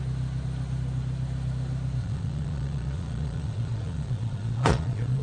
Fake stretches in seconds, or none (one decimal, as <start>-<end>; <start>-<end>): 2.0-5.2